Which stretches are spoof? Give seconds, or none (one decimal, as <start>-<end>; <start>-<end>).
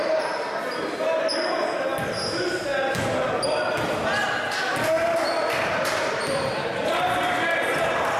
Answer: none